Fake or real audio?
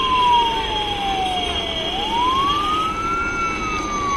real